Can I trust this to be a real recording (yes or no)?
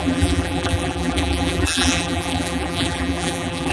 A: no